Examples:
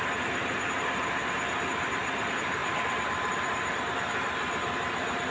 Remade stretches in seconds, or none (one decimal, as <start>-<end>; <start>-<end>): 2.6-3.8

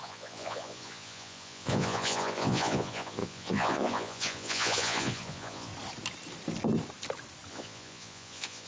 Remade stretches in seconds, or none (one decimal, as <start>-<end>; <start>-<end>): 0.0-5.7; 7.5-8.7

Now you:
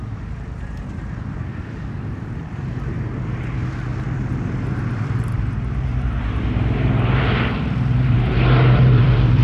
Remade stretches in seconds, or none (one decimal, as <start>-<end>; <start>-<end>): 0.0-3.9; 4.5-9.4

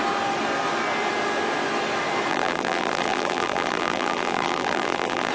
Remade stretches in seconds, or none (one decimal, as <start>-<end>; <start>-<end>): 2.3-5.3

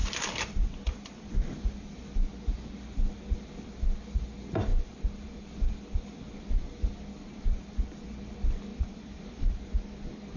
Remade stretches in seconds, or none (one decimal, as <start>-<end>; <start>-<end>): 0.0-1.3; 4.7-6.4; 8.7-10.4